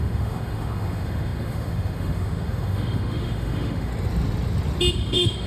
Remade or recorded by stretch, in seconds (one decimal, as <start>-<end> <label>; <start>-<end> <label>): 0.0-3.9 remade; 3.9-4.9 recorded; 4.9-5.5 remade